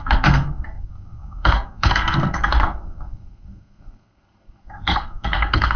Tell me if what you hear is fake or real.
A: fake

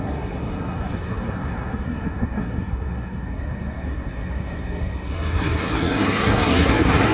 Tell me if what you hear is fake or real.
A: fake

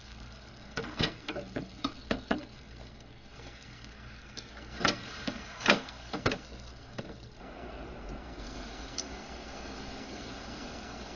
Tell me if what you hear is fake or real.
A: fake